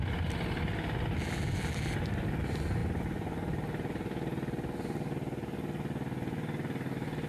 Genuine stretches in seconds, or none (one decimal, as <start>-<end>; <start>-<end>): 0.0-7.3

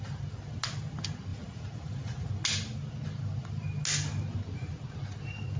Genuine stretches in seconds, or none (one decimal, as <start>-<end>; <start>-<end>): 0.0-1.3; 2.3-5.6

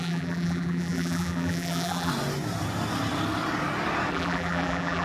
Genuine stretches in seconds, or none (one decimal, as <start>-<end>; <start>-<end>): 2.1-4.1

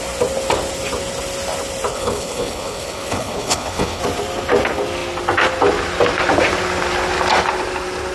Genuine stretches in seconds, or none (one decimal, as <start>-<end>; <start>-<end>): 0.0-1.9; 4.0-8.1

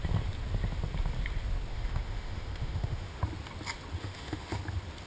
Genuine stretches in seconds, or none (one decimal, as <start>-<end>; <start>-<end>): 0.0-1.7; 3.2-4.0; 4.6-5.1